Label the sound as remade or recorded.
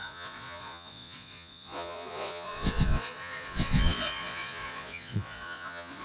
remade